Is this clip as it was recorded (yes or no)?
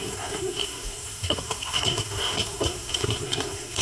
no